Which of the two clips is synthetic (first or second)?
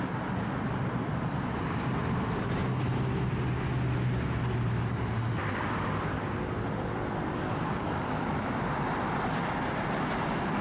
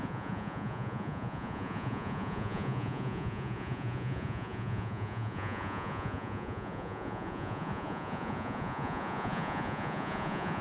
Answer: second